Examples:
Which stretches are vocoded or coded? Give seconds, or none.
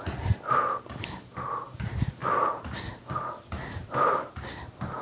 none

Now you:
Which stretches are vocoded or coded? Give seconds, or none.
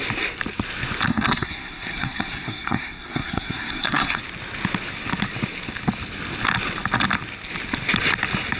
1.1-4.2 (codec, SNAC)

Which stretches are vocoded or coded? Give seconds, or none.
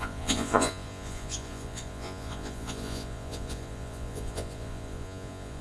0.0-5.6 (vocoder, Vocos)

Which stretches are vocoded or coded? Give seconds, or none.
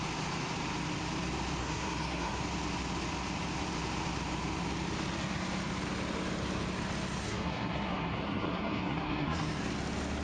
1.6-2.4 (codec, SNAC); 7.2-9.6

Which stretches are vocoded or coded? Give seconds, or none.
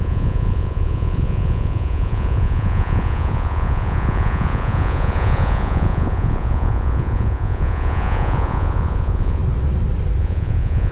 0.0-9.4 (vocoder, Vocos); 10.2-10.9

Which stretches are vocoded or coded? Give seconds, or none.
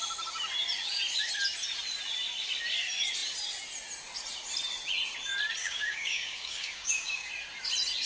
5.6-7.3 (codec, DAC)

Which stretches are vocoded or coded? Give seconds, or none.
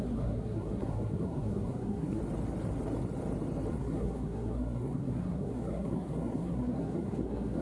0.0-2.2 (codec, SNAC); 3.7-7.6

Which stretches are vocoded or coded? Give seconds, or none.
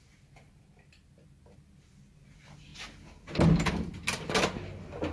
none